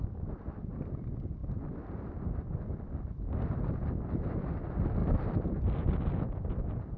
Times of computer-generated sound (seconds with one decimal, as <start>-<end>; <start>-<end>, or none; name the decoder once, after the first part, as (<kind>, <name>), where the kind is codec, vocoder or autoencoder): none